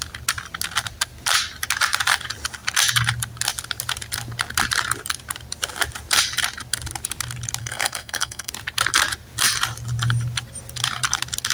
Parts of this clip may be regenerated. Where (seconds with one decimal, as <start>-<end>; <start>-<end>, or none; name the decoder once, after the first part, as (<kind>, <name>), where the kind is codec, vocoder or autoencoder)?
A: 7.6-8.5 (codec, SNAC)